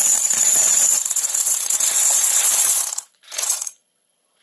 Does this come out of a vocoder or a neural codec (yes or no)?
yes